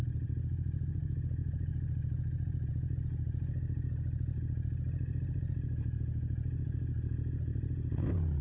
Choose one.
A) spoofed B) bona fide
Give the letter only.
B